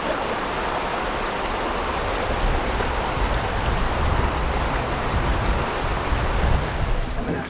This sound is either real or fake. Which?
real